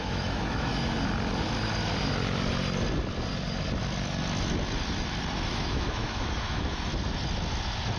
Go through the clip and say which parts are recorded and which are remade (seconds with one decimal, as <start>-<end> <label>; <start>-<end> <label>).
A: 0.0-0.7 remade; 0.7-5.5 recorded; 5.5-6.9 remade; 6.9-8.0 recorded